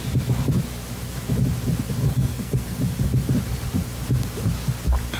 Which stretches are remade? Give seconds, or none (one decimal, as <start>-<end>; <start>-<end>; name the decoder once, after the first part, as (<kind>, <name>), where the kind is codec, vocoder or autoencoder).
2.0-2.8 (codec, SNAC)